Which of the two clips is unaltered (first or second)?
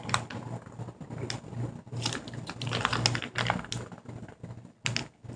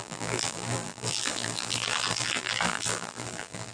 first